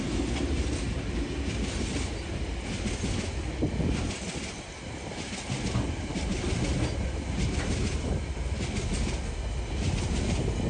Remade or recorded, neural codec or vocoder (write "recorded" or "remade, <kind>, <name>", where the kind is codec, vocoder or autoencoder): recorded